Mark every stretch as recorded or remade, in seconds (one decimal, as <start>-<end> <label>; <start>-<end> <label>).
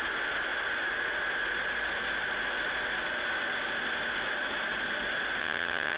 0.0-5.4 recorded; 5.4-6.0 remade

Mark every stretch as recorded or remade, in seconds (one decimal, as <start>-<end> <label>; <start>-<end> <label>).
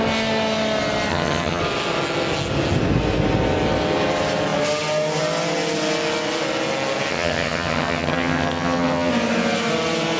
0.0-1.1 recorded; 1.1-1.6 remade; 1.6-7.1 recorded; 7.1-9.1 remade; 9.1-10.2 recorded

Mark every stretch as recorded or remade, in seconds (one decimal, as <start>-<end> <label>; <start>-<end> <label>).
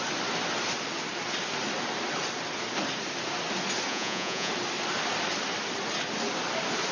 0.0-3.9 recorded; 3.9-4.5 remade; 4.5-6.9 recorded